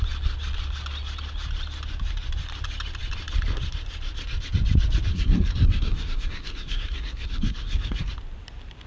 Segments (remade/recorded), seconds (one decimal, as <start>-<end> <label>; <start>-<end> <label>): 0.0-5.1 recorded; 5.1-8.1 remade; 8.1-8.9 recorded